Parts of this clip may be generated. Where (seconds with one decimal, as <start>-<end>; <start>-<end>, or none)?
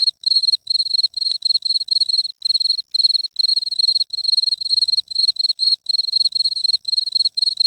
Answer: 0.0-2.3; 3.5-7.7